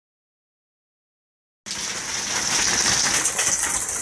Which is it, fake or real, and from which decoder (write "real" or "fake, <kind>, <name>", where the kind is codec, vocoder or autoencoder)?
real